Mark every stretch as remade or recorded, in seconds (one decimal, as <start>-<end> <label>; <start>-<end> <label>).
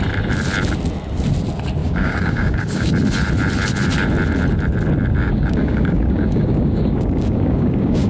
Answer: 0.0-1.8 recorded; 1.8-2.9 remade; 2.9-5.2 recorded; 5.2-8.1 remade